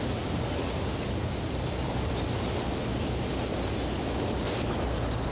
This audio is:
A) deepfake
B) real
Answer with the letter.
B